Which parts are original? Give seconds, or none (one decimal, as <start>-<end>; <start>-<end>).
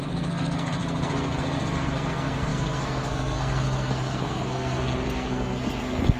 none